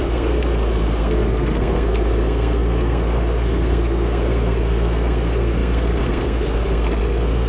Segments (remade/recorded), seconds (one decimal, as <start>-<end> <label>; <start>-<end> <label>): 0.0-7.5 remade